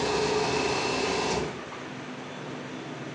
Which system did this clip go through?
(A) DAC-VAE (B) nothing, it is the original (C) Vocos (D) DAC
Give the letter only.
B